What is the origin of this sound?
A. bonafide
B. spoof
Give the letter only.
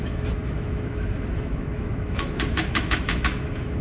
B